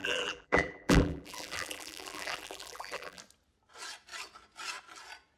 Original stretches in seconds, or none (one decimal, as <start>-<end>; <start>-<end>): 3.2-5.4